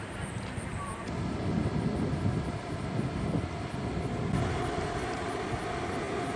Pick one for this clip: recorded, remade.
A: recorded